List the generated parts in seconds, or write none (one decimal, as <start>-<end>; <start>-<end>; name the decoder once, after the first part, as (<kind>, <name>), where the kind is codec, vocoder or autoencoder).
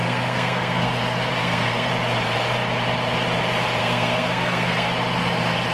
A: 0.0-0.9 (codec, SNAC); 1.4-1.9; 3.8-4.9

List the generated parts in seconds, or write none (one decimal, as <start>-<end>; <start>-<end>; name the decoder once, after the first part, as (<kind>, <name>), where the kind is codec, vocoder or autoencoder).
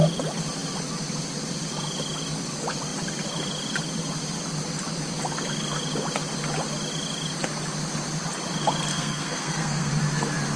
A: 8.9-9.9 (codec, SNAC)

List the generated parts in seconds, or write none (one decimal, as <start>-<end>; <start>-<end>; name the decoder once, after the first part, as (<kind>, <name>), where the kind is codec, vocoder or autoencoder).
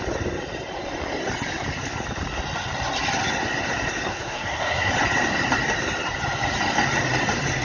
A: 4.1-4.9 (codec, SNAC)